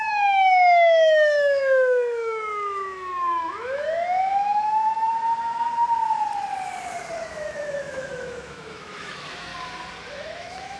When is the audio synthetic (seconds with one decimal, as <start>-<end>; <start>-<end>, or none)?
0.0-5.1; 7.3-9.5; 10.1-10.8